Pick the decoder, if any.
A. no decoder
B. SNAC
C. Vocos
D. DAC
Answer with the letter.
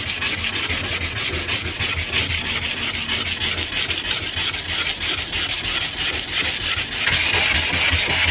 A